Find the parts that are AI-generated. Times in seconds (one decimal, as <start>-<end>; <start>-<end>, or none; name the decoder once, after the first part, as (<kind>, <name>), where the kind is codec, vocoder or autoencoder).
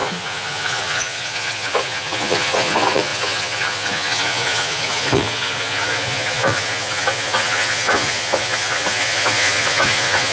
0.0-10.3 (vocoder, Vocos)